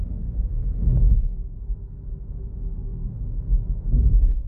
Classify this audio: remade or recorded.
remade